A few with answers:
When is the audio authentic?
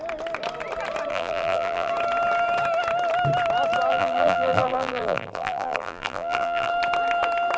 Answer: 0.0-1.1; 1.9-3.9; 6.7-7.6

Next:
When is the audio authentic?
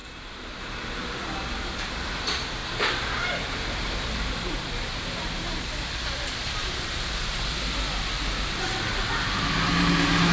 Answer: 0.6-2.6; 7.4-10.3